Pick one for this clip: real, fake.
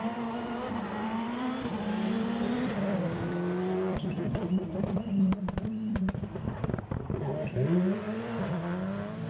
fake